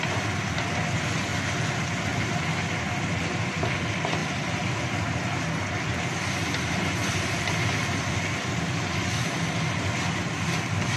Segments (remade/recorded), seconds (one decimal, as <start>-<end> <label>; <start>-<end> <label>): 0.0-11.0 recorded

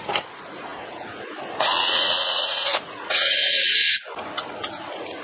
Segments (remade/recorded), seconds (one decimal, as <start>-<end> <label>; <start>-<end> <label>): 0.0-3.4 remade; 3.4-4.6 recorded; 4.6-5.2 remade

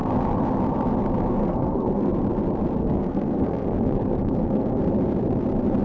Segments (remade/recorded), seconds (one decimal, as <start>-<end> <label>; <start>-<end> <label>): 0.0-1.4 recorded; 1.4-2.1 remade; 2.1-2.8 recorded; 2.8-4.8 remade; 4.8-5.8 recorded

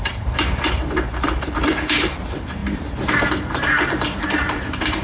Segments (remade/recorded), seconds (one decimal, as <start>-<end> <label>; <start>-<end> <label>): 0.0-5.0 remade

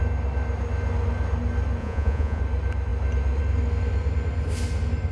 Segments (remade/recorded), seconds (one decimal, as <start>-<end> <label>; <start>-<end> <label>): 0.0-1.8 recorded; 1.8-2.4 remade; 2.4-5.1 recorded